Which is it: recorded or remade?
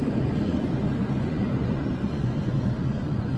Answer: remade